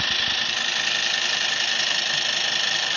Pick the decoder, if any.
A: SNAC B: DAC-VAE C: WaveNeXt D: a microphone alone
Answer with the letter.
D